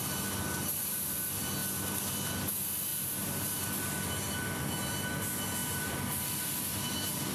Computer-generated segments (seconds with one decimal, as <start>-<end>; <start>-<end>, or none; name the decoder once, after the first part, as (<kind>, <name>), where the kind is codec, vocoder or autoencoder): 2.9-3.6 (vocoder, BigVGAN v2); 5.6-6.2